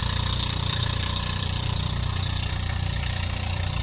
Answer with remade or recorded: remade